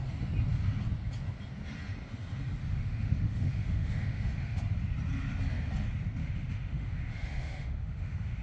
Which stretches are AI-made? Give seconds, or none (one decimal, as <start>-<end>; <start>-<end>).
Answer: 2.6-4.6; 6.2-8.4